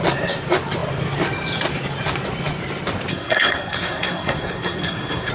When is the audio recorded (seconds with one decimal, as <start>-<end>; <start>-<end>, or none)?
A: 0.0-3.1